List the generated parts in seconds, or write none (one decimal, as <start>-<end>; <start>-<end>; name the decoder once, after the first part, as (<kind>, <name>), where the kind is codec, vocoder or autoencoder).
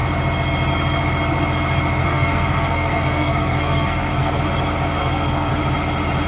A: 2.0-4.4 (codec, SNAC); 5.0-5.5